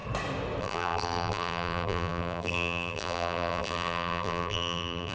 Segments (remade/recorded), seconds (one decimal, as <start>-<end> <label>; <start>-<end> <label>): 0.0-0.6 recorded; 0.6-5.1 remade